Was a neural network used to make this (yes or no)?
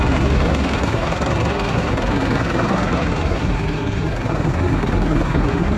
yes